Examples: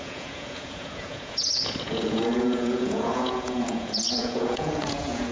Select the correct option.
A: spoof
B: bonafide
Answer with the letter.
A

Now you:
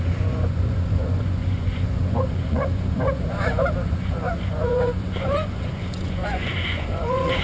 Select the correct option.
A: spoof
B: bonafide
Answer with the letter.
A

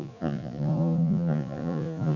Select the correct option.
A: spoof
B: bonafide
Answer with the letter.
A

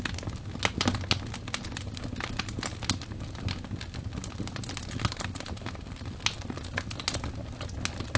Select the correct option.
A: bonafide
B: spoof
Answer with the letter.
A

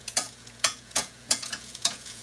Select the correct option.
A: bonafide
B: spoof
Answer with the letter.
B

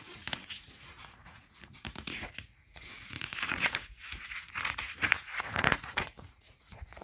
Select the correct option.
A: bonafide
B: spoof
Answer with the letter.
B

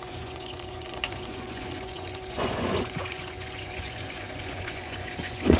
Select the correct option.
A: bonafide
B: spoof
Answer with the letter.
B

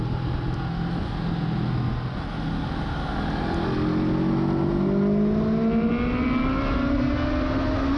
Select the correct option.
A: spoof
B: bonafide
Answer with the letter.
B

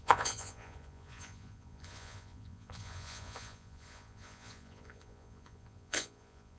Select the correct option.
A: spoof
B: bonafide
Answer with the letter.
A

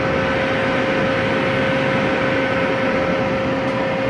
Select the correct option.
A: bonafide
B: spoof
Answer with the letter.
A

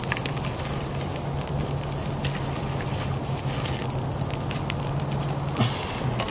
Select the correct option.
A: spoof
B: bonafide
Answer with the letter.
B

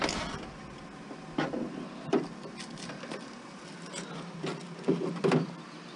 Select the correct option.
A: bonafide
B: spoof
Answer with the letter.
A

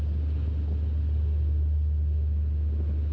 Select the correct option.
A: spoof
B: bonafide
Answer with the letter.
B